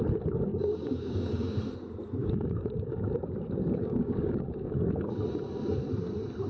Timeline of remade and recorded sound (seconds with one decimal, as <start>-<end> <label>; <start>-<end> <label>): 0.0-0.5 recorded; 0.5-1.6 remade; 1.6-2.2 recorded; 2.2-5.1 remade; 5.1-6.5 recorded

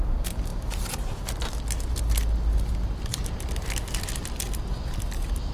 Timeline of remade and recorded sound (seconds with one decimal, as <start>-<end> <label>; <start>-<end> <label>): 0.0-3.1 recorded; 3.1-3.8 remade; 3.8-5.5 recorded

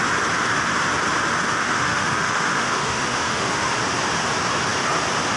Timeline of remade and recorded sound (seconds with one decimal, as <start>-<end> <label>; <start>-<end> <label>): 0.0-1.5 recorded; 1.5-3.7 remade; 3.7-5.4 recorded

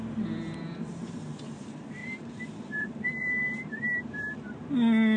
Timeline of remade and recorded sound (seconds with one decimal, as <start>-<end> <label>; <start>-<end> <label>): 0.0-2.0 recorded; 2.0-4.5 remade; 4.5-5.2 recorded

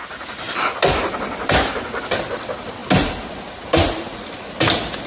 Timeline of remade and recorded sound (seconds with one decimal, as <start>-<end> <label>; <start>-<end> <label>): 0.0-5.1 recorded

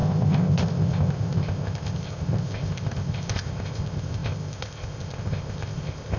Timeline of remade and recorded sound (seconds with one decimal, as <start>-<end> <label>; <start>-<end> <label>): 0.0-6.2 remade